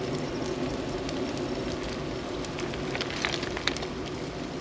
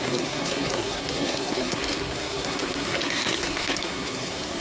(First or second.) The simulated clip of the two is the second